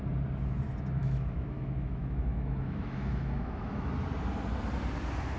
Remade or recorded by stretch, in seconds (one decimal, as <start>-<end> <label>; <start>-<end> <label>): 0.0-1.0 recorded; 1.0-3.9 remade; 3.9-5.4 recorded